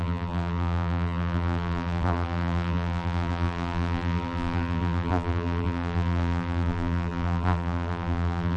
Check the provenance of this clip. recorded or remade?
remade